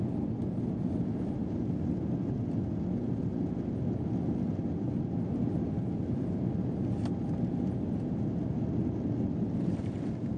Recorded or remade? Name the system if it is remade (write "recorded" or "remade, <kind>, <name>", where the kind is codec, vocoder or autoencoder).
recorded